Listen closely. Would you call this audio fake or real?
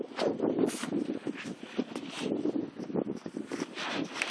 real